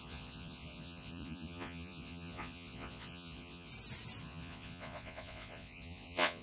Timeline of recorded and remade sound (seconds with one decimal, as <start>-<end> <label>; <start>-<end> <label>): 0.0-3.7 remade; 3.7-4.2 recorded; 4.2-6.4 remade